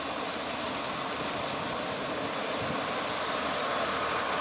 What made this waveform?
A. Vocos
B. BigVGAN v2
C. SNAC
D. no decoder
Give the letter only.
D